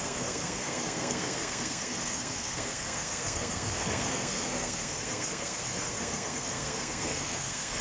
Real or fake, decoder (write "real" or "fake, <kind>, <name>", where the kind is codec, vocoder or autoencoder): fake, codec, SNAC